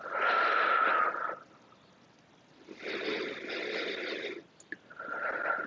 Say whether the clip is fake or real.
real